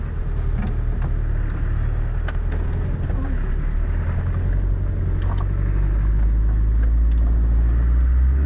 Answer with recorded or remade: recorded